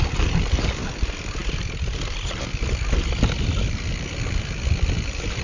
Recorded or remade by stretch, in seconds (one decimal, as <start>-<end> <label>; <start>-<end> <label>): 0.0-5.4 recorded